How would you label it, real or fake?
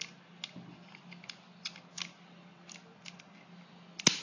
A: real